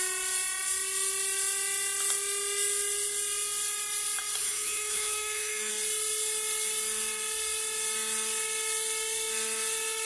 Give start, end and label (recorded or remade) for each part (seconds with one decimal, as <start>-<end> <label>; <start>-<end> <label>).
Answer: 0.0-4.4 recorded; 4.4-5.7 remade; 5.7-10.1 recorded